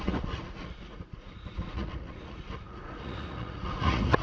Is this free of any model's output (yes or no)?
no